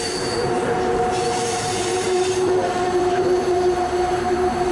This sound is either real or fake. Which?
fake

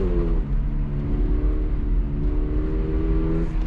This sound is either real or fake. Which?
real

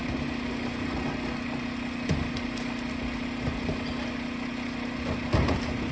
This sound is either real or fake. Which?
real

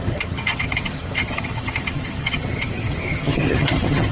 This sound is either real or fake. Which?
fake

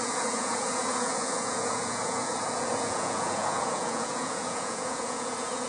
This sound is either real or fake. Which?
fake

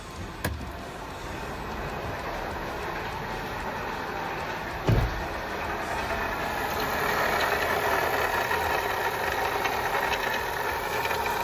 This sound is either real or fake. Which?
real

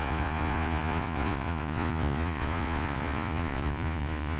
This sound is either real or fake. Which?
fake